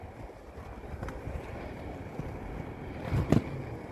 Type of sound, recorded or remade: recorded